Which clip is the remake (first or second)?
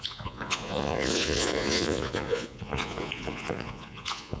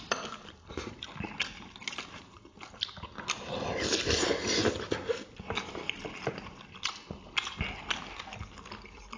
first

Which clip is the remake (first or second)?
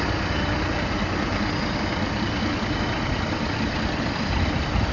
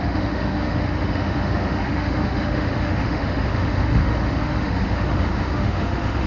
second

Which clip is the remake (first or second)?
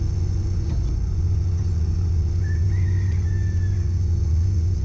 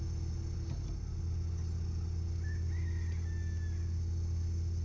first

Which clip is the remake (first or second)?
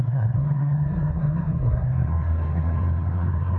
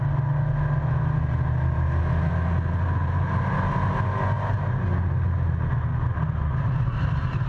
first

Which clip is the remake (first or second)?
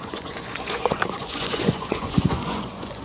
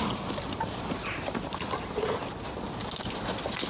first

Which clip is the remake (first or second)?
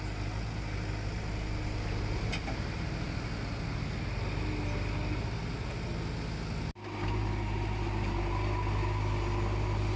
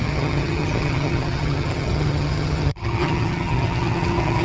second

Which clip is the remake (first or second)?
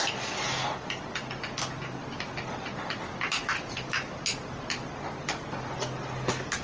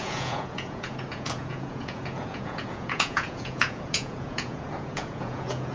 second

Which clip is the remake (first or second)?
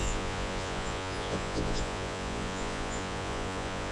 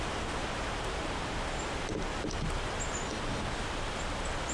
first